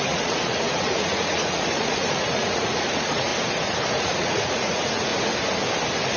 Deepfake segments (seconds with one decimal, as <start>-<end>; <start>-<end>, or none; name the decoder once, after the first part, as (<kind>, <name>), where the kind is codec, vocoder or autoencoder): 0.0-3.3 (vocoder, Vocos); 3.9-5.1